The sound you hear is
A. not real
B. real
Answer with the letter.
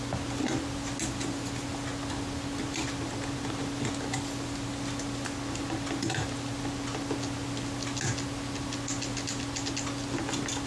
B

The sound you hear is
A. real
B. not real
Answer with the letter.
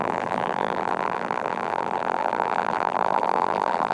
B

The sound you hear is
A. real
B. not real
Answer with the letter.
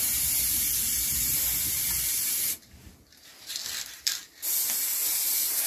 B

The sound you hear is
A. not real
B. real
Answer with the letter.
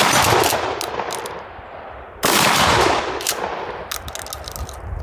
B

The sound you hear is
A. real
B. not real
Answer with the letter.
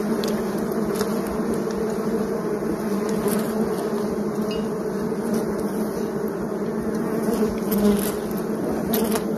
A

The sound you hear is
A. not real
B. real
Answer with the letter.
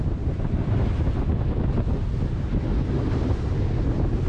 B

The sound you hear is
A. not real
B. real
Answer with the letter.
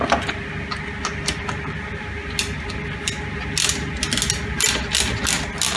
B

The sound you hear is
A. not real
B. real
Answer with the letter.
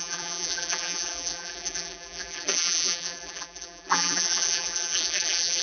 A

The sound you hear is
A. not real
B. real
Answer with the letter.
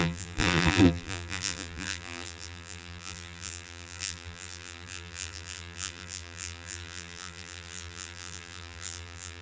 A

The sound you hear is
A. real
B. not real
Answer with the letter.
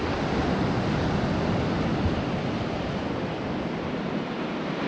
A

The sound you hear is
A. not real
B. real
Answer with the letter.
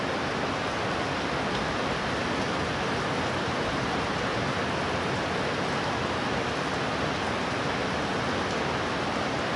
B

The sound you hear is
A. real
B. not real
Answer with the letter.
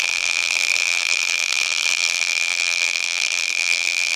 B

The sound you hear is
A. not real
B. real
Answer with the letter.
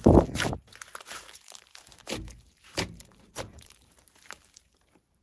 A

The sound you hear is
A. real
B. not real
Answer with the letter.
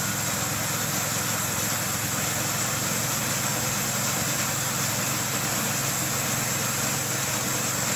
A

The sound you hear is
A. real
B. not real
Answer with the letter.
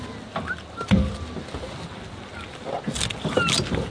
A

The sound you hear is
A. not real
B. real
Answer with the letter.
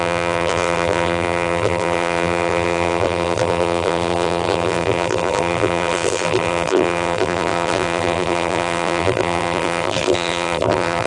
A